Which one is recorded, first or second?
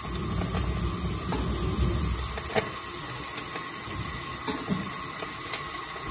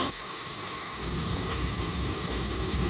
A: first